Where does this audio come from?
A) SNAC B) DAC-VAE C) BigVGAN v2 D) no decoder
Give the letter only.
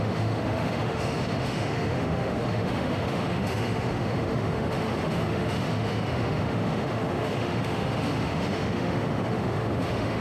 B